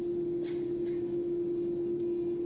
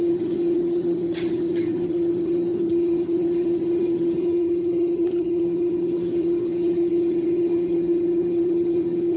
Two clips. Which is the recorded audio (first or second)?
first